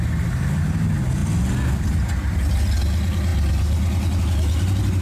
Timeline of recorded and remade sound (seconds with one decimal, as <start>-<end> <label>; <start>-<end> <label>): 0.0-5.0 recorded